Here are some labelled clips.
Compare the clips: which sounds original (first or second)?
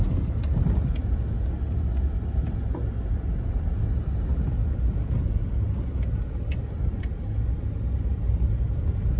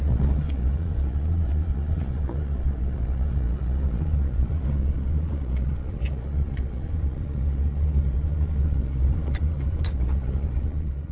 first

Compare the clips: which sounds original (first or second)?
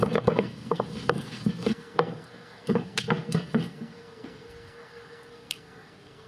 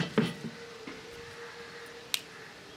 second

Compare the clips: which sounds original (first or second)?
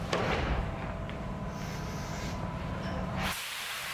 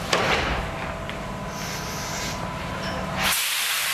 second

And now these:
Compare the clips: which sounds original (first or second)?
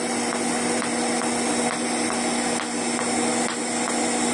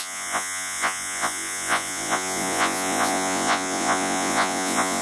first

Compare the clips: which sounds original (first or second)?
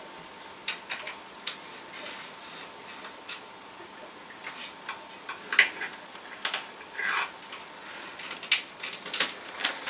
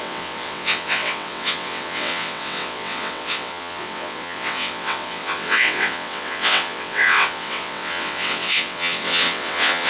first